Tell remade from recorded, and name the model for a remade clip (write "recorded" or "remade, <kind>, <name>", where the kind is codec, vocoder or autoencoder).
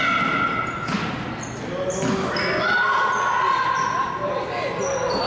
recorded